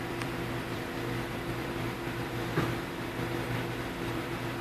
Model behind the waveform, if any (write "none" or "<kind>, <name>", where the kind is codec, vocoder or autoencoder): vocoder, BigVGAN v2